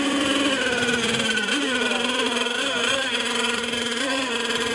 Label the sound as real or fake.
fake